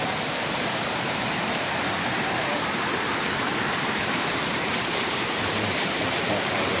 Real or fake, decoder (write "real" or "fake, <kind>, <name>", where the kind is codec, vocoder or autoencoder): fake, vocoder, BigVGAN v2